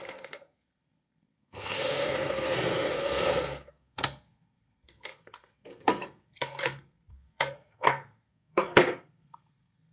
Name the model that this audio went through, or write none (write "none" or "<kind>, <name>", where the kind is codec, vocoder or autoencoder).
codec, SNAC